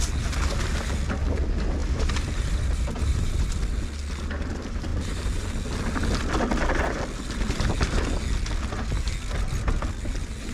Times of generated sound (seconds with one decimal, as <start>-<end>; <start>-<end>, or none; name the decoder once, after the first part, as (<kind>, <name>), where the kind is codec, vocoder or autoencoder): 1.8-3.5 (vocoder, BigVGAN v2)